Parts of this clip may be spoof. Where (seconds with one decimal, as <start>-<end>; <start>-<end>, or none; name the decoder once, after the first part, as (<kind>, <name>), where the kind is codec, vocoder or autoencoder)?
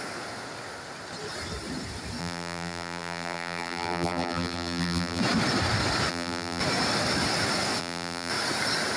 2.2-5.2 (vocoder, BigVGAN v2); 6.1-6.6; 7.8-8.3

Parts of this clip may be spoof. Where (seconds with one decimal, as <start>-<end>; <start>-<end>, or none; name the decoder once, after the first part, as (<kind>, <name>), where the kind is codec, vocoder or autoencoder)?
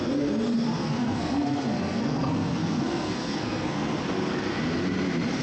0.8-4.0 (codec, SNAC)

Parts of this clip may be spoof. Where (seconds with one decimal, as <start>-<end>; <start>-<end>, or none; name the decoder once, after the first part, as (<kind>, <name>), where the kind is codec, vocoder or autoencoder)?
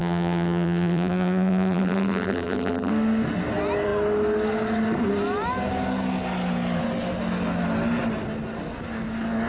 0.0-2.9 (vocoder, BigVGAN v2)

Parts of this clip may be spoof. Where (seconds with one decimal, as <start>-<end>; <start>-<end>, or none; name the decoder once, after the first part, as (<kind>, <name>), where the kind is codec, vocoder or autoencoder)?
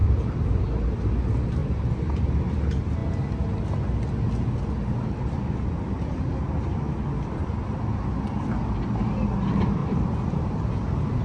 0.0-0.8 (vocoder, BigVGAN v2); 1.6-2.2; 9.8-11.2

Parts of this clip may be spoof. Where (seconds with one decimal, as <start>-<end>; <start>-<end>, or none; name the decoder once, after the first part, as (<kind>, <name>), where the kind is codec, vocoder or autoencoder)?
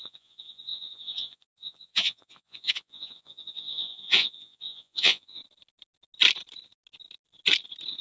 0.0-5.4 (vocoder, Vocos)